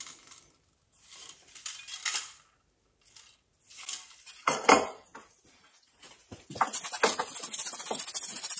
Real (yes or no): yes